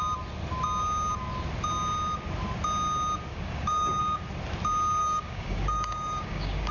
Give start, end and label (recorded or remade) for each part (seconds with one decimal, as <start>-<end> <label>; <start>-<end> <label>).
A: 0.0-3.3 recorded; 3.3-4.0 remade; 4.0-5.0 recorded; 5.0-6.7 remade